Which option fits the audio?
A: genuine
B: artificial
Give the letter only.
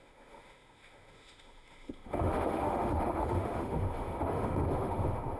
B